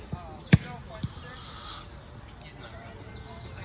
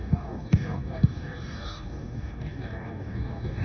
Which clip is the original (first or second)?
first